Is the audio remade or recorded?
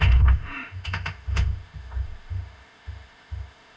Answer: remade